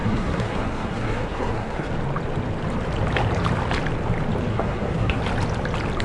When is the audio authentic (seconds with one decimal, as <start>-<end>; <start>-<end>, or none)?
1.9-4.5; 5.2-6.0